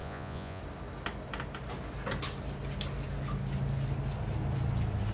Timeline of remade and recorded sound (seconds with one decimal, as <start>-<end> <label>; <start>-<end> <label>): 0.0-0.6 remade; 0.6-5.1 recorded